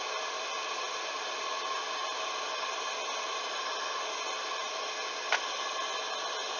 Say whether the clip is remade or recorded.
recorded